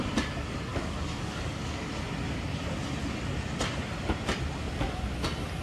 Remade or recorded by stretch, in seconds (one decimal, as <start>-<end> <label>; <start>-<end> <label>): 0.0-0.7 recorded; 0.7-1.9 remade; 1.9-5.6 recorded